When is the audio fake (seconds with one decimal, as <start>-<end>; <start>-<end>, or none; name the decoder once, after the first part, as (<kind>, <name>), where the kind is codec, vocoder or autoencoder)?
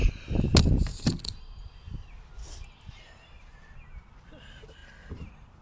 none